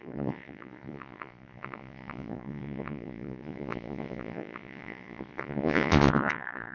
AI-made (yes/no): yes